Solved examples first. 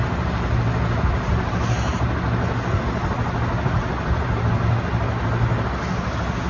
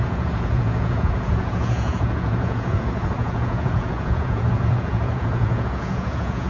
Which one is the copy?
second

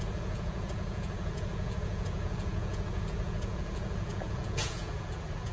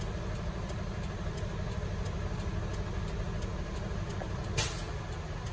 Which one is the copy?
first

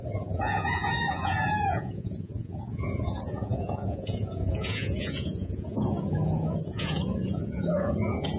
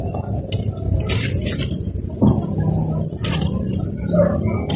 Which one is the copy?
first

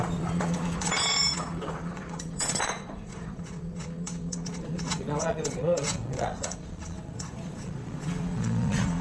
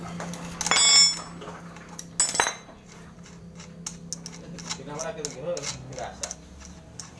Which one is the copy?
first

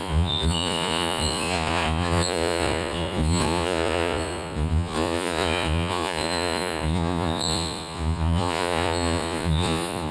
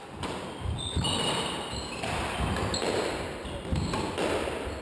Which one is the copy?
first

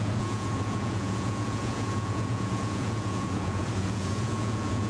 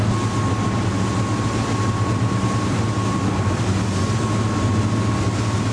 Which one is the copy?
first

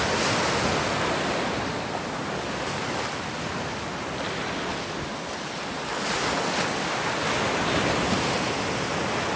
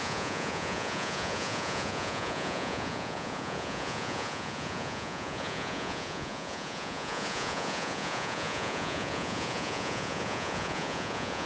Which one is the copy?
second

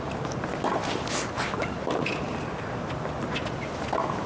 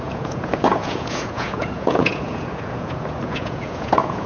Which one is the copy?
second